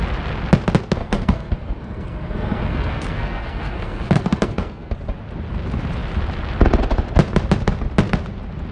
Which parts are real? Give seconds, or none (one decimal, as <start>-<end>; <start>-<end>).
0.0-1.0; 4.9-8.7